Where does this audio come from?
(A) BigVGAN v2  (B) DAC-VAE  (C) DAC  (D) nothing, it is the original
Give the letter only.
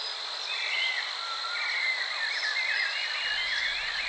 D